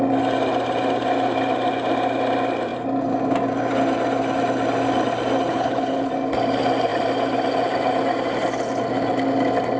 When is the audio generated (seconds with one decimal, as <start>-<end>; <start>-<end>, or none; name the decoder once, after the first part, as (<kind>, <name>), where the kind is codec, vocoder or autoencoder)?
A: 5.5-6.1 (codec, HILCodec)